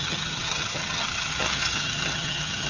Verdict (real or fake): fake